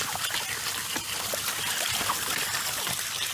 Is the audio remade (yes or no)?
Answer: no